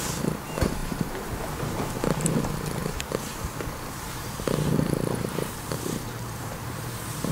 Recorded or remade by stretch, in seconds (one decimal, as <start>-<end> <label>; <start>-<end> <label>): 0.0-0.8 recorded; 0.8-2.2 remade; 2.2-2.8 recorded; 2.8-7.3 remade